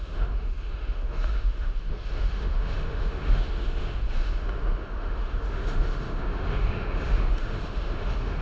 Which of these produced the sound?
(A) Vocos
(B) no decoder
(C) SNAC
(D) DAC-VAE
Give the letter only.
D